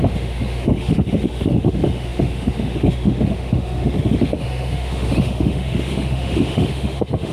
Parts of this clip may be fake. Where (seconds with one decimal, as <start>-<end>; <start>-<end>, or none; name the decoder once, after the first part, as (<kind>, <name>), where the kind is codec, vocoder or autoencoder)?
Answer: 0.0-7.3 (autoencoder, DAC-VAE)